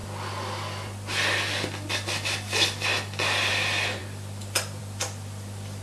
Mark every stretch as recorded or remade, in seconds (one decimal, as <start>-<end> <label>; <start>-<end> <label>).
0.0-5.8 recorded